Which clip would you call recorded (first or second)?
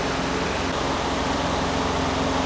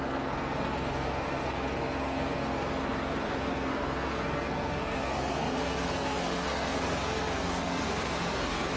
first